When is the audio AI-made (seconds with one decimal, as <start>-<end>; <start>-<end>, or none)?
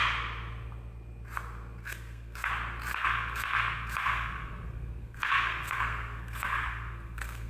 1.8-2.5; 2.9-7.5